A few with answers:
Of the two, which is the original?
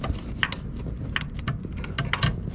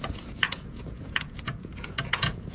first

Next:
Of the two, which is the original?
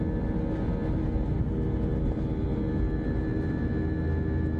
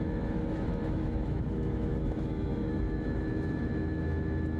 first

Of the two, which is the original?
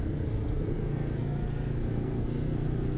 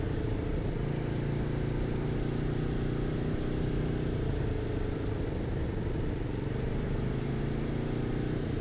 second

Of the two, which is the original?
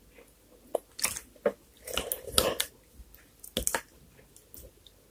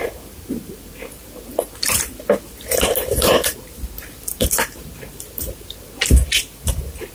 first